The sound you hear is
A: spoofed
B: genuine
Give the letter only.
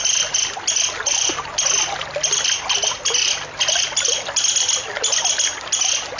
B